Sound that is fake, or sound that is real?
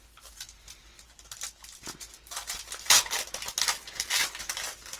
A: real